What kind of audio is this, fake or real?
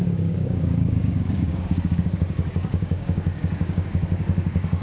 fake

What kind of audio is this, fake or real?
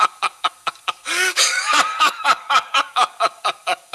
fake